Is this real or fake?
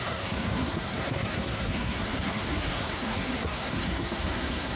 fake